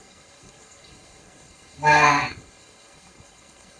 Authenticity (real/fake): fake